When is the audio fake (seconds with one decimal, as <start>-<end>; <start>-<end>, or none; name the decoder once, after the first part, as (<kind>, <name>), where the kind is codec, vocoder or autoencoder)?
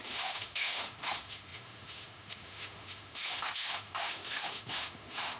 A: 0.0-5.4 (autoencoder, DAC-VAE)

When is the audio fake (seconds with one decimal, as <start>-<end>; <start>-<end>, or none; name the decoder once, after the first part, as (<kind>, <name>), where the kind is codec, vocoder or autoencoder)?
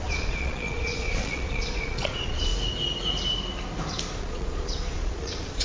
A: 0.0-2.5 (vocoder, Vocos); 4.2-5.6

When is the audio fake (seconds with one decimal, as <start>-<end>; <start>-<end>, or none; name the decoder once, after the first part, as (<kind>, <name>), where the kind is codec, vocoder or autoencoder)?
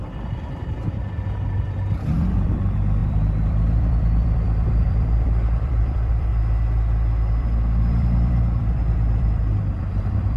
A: 0.0-6.3 (vocoder, BigVGAN v2); 7.4-10.4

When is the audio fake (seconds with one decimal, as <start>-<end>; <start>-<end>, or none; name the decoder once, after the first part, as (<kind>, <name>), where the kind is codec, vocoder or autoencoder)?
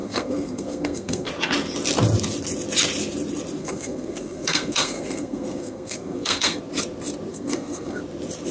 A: 0.0-1.3 (codec, SNAC); 3.6-6.6; 7.3-8.0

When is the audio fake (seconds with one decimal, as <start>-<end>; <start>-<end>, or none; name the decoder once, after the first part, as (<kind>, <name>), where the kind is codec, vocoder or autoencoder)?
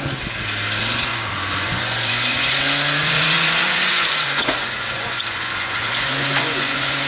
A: 1.1-2.6 (vocoder, Vocos); 3.0-7.1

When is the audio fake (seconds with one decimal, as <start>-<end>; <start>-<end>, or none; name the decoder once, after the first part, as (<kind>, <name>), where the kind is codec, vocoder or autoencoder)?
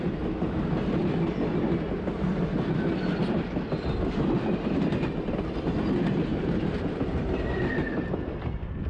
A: 6.3-7.3 (vocoder, BigVGAN v2)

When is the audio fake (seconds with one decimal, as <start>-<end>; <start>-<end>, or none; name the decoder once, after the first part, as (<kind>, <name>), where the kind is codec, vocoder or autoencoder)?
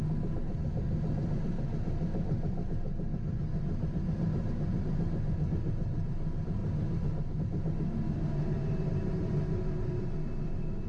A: none